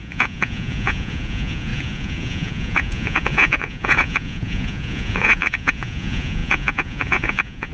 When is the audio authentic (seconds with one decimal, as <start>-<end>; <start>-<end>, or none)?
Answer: none